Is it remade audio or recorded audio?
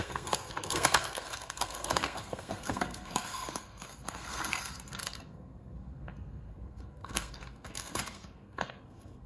remade